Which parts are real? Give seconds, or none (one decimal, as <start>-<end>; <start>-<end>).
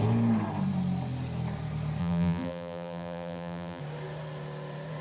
0.0-2.0; 3.8-5.0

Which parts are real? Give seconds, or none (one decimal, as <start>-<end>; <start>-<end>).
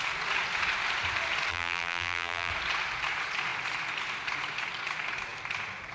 0.0-1.5; 2.5-5.9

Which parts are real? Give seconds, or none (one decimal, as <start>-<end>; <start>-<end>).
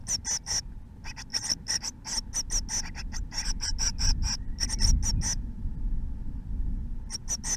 0.0-7.6